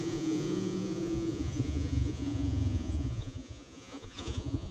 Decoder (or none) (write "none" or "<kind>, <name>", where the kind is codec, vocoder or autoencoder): vocoder, Vocos